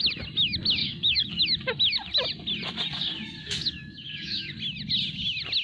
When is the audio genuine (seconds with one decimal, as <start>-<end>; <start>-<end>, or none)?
0.0-0.8; 1.4-3.4; 4.5-5.6